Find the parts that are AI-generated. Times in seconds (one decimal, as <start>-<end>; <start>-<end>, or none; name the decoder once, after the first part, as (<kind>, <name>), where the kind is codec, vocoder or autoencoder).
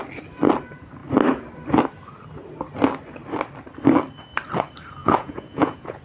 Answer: 5.0-6.0 (vocoder, Vocos)